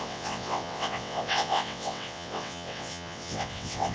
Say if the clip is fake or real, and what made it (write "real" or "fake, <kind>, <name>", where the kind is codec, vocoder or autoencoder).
fake, vocoder, WaveNeXt